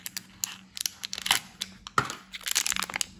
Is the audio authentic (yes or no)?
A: yes